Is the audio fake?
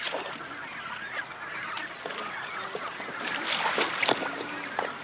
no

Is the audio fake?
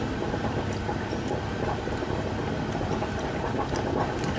no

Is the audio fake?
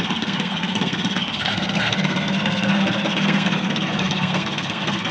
yes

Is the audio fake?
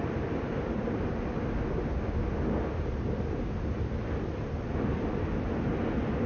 no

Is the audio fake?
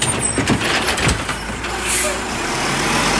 no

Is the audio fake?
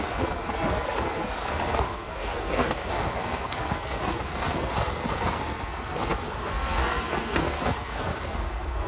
yes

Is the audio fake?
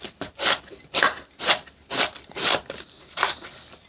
no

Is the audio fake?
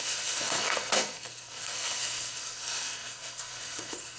yes